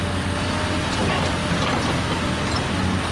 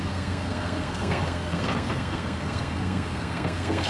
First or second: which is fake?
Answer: second